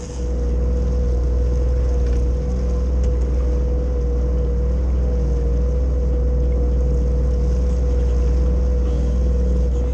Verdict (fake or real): real